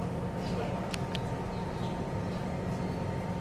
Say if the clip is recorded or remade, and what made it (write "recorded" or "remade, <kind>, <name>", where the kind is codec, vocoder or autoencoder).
recorded